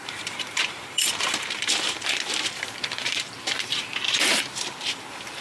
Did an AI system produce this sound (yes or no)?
yes